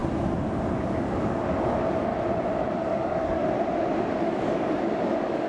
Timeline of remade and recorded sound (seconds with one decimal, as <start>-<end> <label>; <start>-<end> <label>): 0.0-0.8 recorded; 0.8-2.1 remade; 2.1-2.7 recorded; 2.7-3.4 remade; 3.4-4.2 recorded; 4.2-5.5 remade